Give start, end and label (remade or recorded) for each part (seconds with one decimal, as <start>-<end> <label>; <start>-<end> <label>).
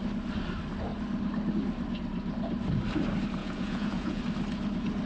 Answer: 0.0-3.4 recorded; 3.4-4.2 remade; 4.2-5.1 recorded